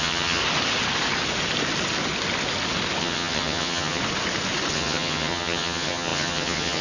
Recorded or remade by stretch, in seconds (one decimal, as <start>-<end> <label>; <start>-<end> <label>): 0.0-0.4 remade; 0.4-3.0 recorded; 3.0-4.0 remade; 4.0-4.7 recorded; 4.7-6.8 remade